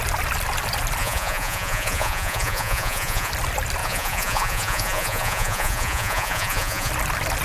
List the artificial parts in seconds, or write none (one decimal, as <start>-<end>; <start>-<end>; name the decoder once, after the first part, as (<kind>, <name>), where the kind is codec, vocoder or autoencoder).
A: 1.0-3.3 (vocoder, Vocos); 3.8-6.9